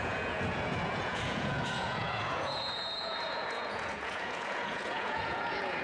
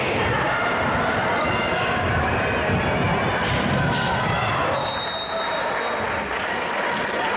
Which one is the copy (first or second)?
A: first